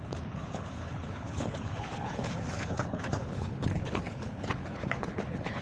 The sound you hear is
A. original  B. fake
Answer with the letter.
B